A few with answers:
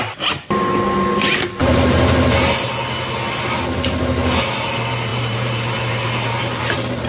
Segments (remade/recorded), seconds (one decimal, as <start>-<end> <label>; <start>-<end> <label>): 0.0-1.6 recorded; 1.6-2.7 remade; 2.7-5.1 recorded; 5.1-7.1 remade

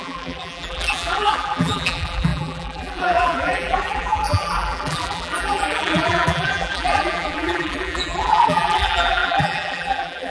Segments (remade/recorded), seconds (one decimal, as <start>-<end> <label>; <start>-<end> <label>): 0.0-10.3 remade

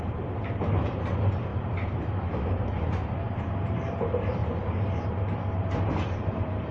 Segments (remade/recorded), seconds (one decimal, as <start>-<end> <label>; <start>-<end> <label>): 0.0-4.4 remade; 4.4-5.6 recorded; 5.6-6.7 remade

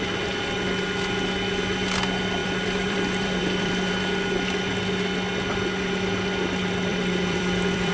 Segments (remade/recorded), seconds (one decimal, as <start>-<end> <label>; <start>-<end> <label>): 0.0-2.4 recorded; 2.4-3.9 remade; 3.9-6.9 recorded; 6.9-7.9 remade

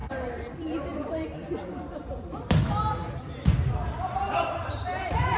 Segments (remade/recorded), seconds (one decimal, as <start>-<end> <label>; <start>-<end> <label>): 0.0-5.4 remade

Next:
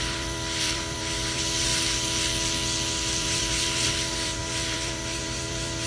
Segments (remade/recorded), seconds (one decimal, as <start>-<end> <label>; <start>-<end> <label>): 0.0-1.7 remade; 1.7-3.2 recorded; 3.2-5.9 remade

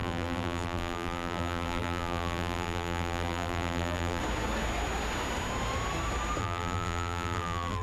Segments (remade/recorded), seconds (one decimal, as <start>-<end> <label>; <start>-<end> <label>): 0.0-4.2 remade; 4.2-6.4 recorded; 6.4-7.8 remade